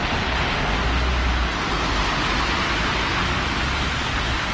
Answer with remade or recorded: recorded